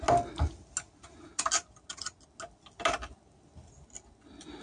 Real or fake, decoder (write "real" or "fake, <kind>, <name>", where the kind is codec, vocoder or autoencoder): real